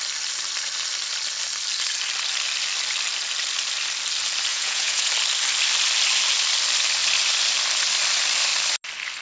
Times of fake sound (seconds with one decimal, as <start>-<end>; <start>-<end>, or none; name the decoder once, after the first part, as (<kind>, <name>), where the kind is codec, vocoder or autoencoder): 4.5-5.1 (vocoder, Vocos)